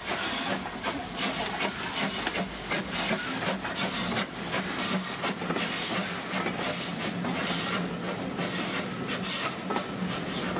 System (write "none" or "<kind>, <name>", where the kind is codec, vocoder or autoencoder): none